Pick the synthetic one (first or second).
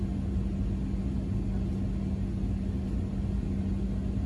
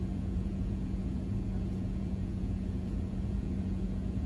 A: second